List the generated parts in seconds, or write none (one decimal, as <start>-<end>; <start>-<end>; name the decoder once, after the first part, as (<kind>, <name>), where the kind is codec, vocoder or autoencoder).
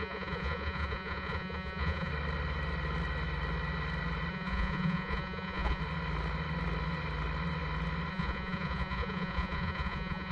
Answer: 0.0-2.1 (vocoder, Vocos); 4.3-5.8; 8.1-10.3